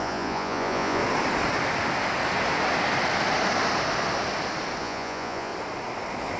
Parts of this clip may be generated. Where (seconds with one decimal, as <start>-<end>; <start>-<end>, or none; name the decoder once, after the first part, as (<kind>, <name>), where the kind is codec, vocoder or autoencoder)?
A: 0.0-1.0 (vocoder, Vocos); 4.8-5.5